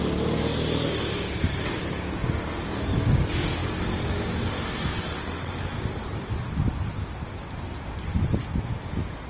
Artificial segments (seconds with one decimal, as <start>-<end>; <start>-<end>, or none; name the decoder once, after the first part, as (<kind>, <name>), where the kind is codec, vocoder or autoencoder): 4.9-5.5 (vocoder, WaveNeXt)